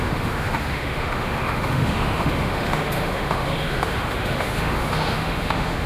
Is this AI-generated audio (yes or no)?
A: yes